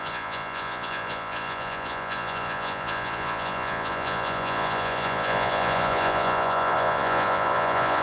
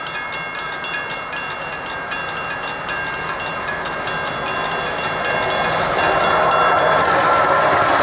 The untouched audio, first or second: second